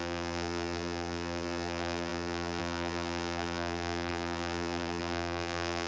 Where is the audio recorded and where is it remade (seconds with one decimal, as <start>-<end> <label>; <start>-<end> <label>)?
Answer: 0.0-5.9 remade